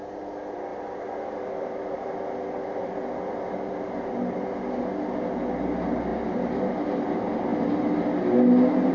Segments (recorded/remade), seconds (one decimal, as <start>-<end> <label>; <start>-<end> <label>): 0.0-8.9 recorded